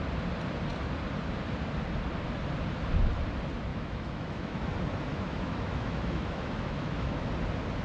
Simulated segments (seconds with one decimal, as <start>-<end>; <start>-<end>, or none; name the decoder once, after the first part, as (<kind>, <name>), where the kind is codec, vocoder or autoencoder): 3.7-4.6 (autoencoder, DAC-VAE); 5.1-7.3